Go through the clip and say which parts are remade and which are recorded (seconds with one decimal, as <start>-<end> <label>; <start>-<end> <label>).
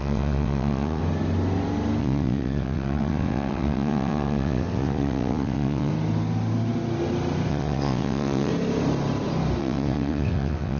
0.0-1.0 remade; 1.0-2.0 recorded; 2.0-5.9 remade; 5.9-7.5 recorded; 7.5-8.5 remade; 8.5-9.6 recorded; 9.6-10.8 remade